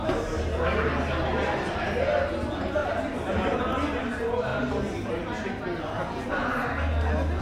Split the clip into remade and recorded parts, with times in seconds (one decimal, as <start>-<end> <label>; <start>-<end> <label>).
0.0-2.8 recorded; 2.8-3.6 remade; 3.6-7.4 recorded